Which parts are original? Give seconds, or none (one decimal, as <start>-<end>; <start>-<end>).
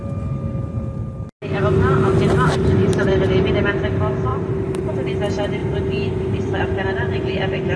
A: 0.0-2.8; 3.5-4.3; 4.9-5.6; 6.6-7.8